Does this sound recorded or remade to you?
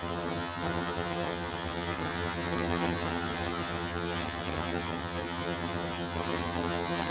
remade